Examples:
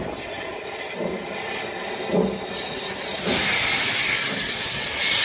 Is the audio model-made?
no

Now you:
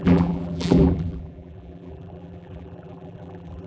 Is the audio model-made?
yes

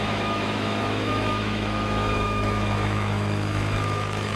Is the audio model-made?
yes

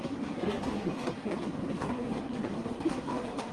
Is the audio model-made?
yes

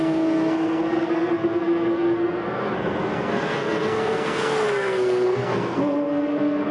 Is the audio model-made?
yes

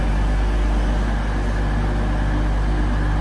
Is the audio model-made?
no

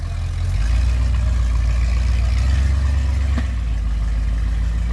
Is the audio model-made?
no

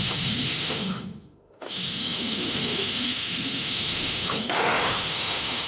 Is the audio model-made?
yes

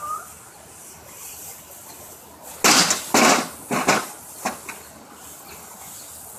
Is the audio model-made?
no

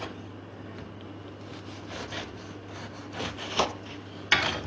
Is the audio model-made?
no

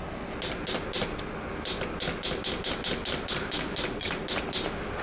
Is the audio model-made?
no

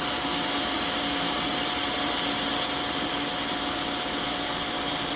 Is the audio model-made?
no